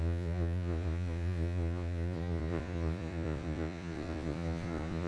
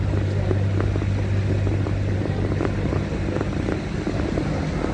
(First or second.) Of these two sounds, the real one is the second